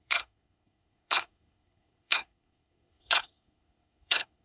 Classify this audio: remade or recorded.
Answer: remade